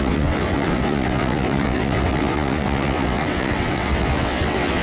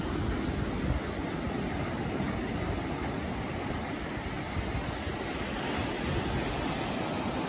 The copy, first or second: first